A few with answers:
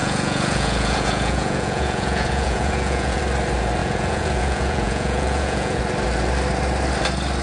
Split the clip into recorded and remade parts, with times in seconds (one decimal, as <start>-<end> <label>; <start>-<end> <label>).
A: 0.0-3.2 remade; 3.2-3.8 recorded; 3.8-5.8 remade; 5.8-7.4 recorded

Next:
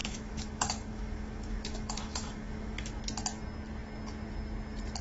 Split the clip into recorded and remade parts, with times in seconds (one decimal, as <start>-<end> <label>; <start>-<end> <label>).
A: 0.0-3.0 remade; 3.0-5.0 recorded

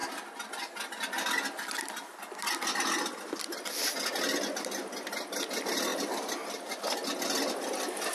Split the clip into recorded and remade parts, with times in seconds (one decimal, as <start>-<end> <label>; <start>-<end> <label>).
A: 0.0-8.1 recorded

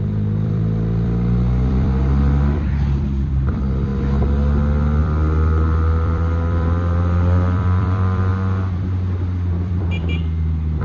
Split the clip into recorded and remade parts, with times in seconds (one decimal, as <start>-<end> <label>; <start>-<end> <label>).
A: 0.0-3.9 remade; 3.9-5.0 recorded; 5.0-8.3 remade; 8.3-9.2 recorded; 9.2-10.8 remade

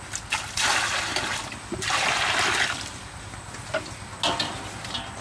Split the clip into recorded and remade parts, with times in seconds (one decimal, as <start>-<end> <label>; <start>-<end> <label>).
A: 0.0-5.2 recorded

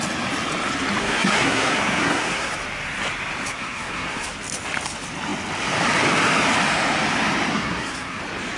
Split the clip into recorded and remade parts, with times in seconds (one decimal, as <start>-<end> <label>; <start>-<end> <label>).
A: 0.0-1.0 recorded; 1.0-2.5 remade; 2.5-3.5 recorded; 3.5-4.3 remade; 4.3-7.5 recorded; 7.5-8.2 remade; 8.2-8.6 recorded

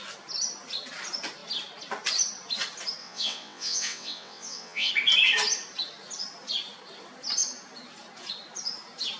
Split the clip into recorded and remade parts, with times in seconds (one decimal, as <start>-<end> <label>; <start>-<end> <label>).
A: 0.0-3.0 recorded; 3.0-4.9 remade; 4.9-9.2 recorded

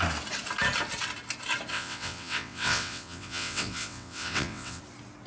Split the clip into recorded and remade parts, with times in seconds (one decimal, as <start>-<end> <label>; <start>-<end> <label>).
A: 0.0-1.7 recorded; 1.7-4.8 remade; 4.8-5.3 recorded